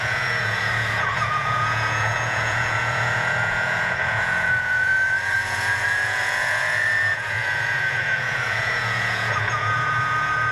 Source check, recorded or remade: remade